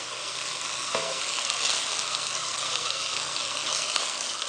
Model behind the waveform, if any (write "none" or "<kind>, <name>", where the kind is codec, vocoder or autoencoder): codec, SNAC